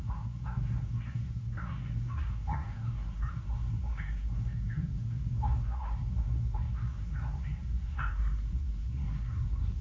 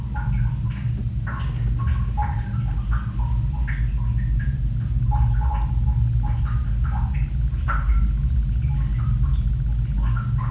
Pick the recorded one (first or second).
second